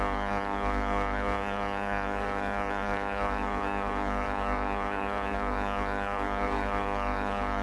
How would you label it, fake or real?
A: fake